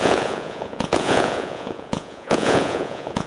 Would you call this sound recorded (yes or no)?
no